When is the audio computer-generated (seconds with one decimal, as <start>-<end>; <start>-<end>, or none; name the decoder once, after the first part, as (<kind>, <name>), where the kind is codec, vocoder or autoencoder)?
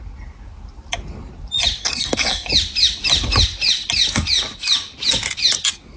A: 1.8-2.5 (codec, SNAC)